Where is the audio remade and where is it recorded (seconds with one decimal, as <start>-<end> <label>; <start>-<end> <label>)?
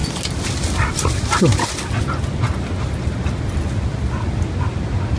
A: 0.0-5.2 recorded